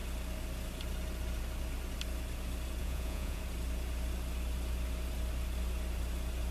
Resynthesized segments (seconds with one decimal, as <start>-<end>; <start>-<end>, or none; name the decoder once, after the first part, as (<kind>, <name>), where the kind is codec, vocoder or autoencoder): 2.8-3.4 (vocoder, Vocos)